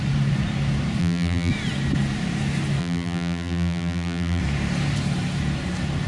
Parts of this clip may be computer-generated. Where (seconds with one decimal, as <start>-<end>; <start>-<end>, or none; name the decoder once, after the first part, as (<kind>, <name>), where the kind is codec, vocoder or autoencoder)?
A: 1.0-1.5 (vocoder, BigVGAN v2); 2.8-4.4